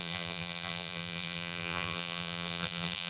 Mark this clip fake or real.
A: fake